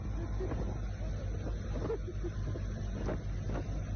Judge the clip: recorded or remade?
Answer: recorded